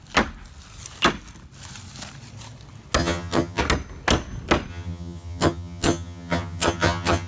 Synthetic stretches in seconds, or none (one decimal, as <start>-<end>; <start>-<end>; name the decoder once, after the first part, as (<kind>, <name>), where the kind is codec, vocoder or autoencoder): 3.0-3.6 (vocoder, HiFi-GAN); 4.7-7.3